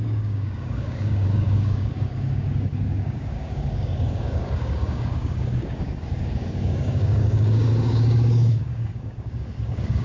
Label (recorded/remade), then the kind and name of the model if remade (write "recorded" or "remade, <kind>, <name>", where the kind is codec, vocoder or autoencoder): remade, codec, DAC